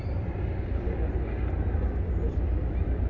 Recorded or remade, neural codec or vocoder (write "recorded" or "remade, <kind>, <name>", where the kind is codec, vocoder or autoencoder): recorded